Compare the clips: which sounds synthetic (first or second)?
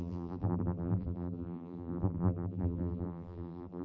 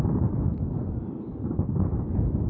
first